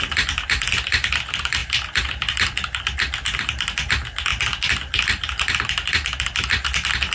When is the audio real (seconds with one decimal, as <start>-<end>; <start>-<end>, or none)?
0.0-1.6; 2.8-7.1